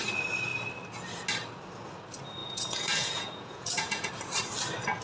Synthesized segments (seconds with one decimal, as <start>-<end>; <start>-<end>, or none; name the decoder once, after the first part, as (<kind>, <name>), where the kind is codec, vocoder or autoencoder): 2.4-4.1 (vocoder, Vocos)